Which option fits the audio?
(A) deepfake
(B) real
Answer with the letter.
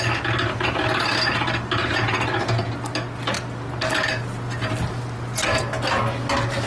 B